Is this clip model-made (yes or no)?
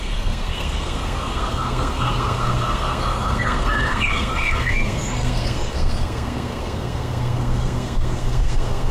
yes